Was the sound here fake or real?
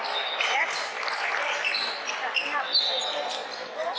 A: real